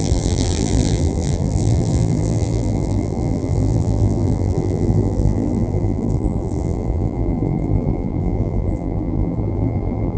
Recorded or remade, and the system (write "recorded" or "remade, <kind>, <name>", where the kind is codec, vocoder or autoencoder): remade, vocoder, BigVGAN v2